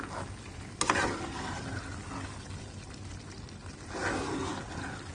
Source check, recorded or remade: recorded